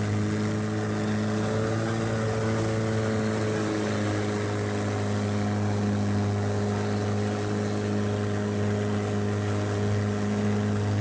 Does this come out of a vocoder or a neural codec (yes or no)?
no